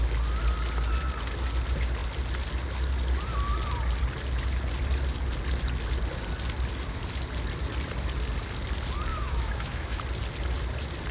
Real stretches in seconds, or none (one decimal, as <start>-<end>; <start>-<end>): 0.0-9.1; 10.0-11.1